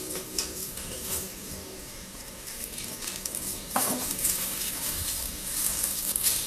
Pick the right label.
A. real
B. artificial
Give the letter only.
B